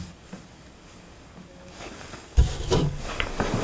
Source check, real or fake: fake